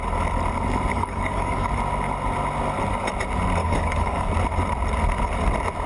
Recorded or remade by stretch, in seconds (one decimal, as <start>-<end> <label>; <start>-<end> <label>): 0.0-0.9 recorded; 0.9-1.7 remade; 1.7-3.6 recorded; 3.6-4.3 remade; 4.3-5.9 recorded